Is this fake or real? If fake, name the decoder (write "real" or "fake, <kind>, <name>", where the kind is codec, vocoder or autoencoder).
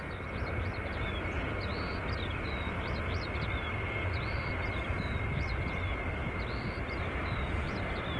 real